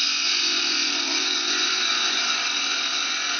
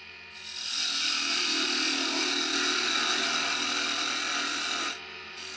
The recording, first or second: second